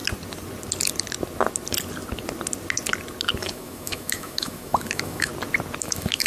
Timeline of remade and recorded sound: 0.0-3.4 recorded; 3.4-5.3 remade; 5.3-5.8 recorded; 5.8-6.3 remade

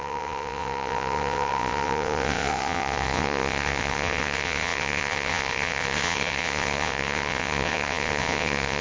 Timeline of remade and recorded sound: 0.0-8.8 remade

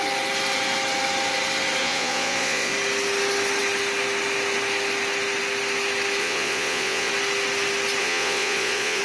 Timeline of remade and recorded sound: 0.0-1.8 recorded; 1.8-2.7 remade; 2.7-6.2 recorded; 6.2-7.1 remade; 7.1-8.0 recorded; 8.0-9.0 remade

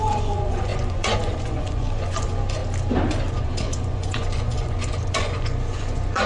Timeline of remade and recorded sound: 0.0-2.6 remade; 2.6-3.3 recorded; 3.3-6.3 remade

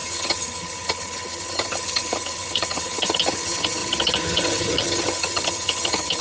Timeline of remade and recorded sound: 0.0-6.2 remade